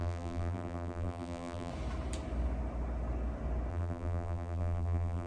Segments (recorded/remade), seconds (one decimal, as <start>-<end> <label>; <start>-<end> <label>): 0.0-1.7 remade; 1.7-3.7 recorded; 3.7-5.3 remade